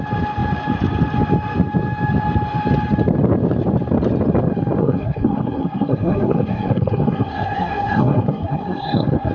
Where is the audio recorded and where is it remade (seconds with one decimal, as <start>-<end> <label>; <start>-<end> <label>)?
0.0-4.8 recorded; 4.8-9.3 remade